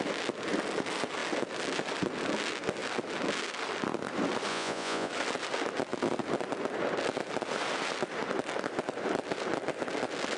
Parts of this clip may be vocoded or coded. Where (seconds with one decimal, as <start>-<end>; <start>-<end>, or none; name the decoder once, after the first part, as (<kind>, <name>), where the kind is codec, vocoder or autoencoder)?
4.5-5.1 (vocoder, Vocos)